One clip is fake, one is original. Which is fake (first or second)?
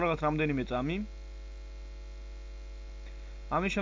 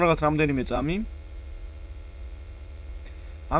second